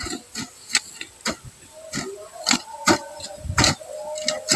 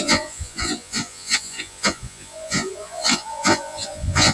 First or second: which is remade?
second